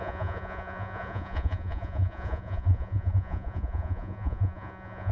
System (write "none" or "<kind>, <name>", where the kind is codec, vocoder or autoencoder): vocoder, Vocos